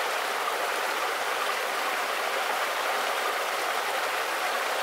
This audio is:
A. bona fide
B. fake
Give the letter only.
A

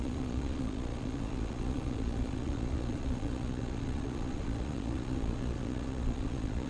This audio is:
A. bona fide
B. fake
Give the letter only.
B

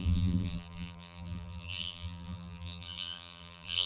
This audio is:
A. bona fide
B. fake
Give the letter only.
B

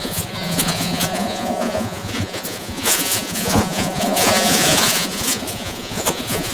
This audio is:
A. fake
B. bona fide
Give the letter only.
A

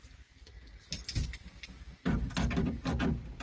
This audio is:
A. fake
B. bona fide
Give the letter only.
B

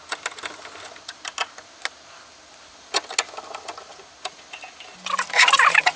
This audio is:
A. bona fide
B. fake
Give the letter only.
A